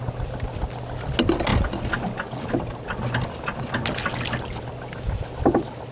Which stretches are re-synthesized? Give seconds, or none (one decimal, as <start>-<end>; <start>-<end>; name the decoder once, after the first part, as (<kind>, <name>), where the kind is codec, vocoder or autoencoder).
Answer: none